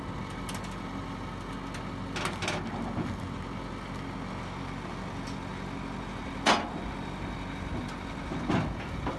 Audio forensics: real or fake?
real